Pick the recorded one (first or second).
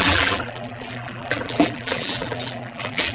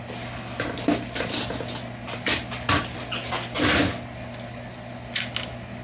second